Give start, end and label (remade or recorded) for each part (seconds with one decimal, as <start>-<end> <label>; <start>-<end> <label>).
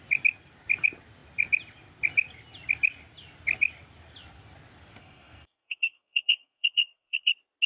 0.0-5.0 recorded; 5.0-7.3 remade; 7.3-7.7 recorded